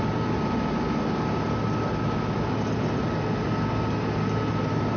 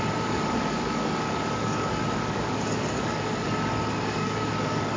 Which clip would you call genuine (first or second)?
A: first